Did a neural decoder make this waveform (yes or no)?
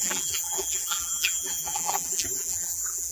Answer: yes